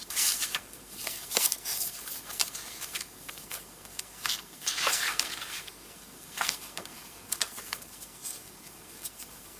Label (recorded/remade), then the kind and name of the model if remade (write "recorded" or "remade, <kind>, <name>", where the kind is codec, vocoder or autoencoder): remade, codec, SNAC